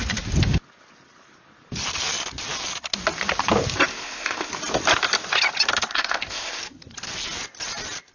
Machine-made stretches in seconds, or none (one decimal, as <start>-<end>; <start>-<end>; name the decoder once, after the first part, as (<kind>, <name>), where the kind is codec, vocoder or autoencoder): 3.9-4.5 (codec, ZipCodec); 5.9-6.6